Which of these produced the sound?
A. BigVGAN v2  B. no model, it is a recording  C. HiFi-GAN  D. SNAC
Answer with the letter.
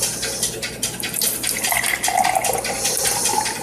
B